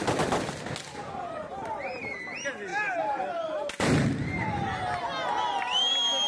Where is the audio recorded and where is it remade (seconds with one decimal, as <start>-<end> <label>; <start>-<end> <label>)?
0.0-6.3 recorded